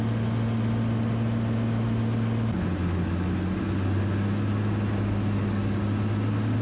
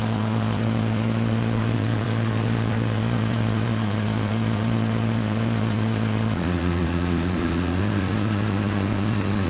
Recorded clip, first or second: first